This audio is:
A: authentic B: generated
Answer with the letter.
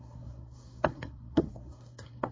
B